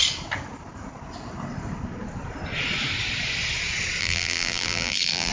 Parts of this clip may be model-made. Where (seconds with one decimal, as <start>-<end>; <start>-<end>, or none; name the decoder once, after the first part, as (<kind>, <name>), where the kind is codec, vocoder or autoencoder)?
4.0-5.3 (vocoder, BigVGAN v2)